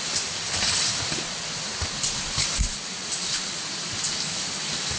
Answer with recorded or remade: recorded